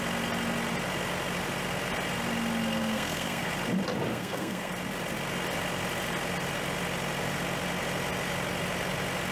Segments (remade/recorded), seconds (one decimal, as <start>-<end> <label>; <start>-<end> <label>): 0.0-2.8 recorded; 2.8-3.5 remade; 3.5-4.1 recorded; 4.1-4.7 remade; 4.7-9.3 recorded